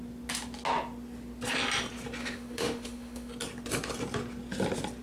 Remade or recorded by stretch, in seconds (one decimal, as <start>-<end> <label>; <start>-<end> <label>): 0.0-2.2 recorded; 2.2-3.3 remade; 3.3-5.0 recorded